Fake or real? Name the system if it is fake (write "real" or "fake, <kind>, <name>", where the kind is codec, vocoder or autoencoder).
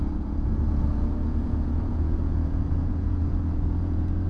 fake, vocoder, Vocos